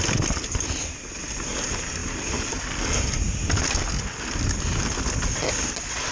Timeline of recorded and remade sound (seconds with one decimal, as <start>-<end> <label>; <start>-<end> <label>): 0.0-6.1 recorded